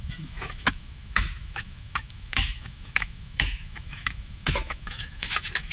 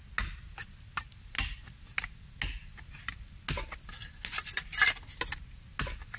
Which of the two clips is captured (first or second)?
second